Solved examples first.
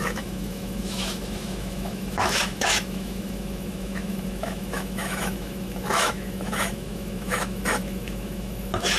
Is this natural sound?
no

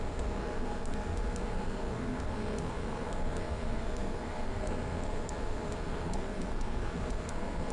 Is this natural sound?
no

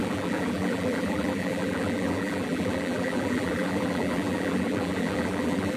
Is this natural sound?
no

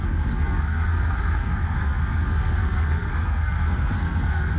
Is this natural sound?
no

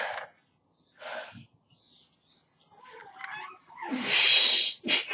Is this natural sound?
yes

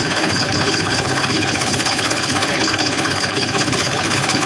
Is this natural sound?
no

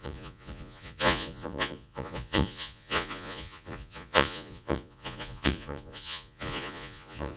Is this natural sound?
no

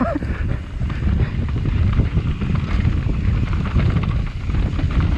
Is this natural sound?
yes